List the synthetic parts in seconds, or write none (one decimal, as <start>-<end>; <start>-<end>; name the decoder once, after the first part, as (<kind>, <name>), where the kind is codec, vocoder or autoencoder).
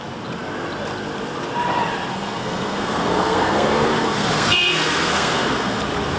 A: 2.1-5.8 (codec, SNAC)